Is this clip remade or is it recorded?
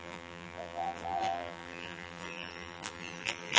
remade